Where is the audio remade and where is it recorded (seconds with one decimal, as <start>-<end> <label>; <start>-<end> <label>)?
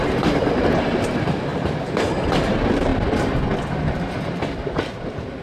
0.0-2.9 remade; 2.9-3.7 recorded; 3.7-5.4 remade